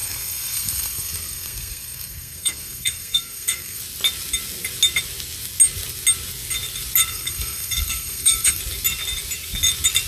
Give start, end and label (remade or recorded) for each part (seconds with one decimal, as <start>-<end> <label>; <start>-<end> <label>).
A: 0.0-3.8 remade; 3.8-7.1 recorded; 7.1-8.6 remade; 8.6-10.1 recorded